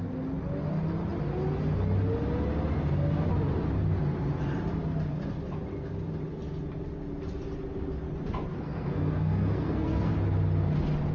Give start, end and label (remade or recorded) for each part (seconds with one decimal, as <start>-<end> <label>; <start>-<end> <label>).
0.0-8.5 recorded; 8.5-10.1 remade; 10.1-11.1 recorded